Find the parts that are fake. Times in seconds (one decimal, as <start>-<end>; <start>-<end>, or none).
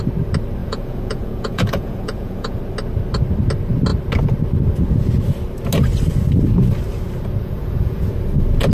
0.6-2.6; 7.4-8.1